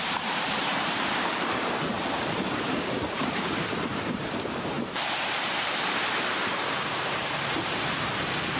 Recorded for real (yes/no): no